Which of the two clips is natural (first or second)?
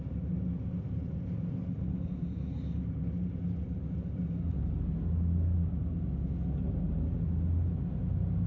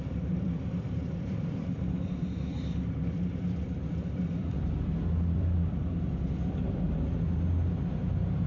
first